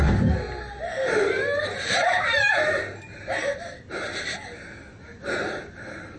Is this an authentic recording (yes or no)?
yes